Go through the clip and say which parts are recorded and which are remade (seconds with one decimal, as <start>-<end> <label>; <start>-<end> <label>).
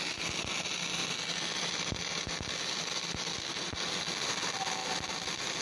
0.0-5.6 recorded